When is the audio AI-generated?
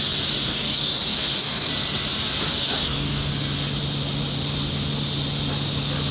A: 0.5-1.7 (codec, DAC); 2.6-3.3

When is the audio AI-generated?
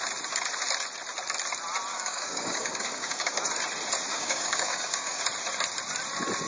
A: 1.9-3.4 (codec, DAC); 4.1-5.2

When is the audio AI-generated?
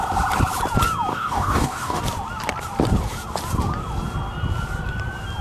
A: 1.1-2.0 (codec, DAC)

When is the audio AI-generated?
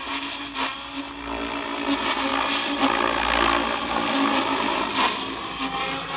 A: none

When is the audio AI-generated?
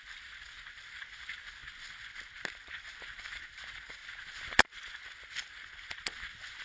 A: none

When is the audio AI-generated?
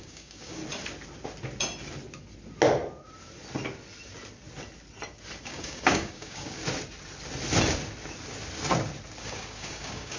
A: 0.0-0.6 (codec, DAC); 5.4-6.6; 9.2-10.2